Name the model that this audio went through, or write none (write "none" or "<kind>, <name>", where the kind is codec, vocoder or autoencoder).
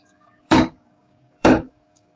codec, DAC